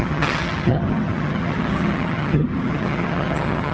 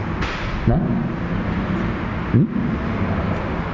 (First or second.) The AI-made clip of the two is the first